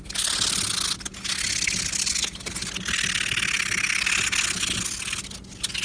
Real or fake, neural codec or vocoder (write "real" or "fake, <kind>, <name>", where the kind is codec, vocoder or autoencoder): real